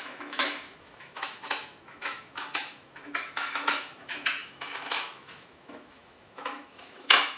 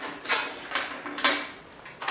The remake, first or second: first